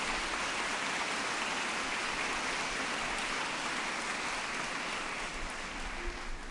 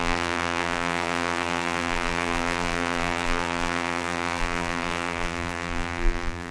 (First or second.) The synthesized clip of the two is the second